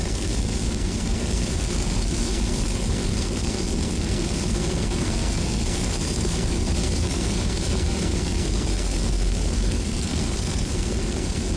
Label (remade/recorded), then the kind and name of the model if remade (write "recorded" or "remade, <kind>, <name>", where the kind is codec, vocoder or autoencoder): remade, codec, SNAC